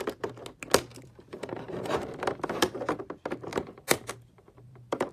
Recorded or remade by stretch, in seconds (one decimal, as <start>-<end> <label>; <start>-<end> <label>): 0.0-0.9 recorded; 0.9-3.0 remade; 3.0-3.5 recorded; 3.5-5.1 remade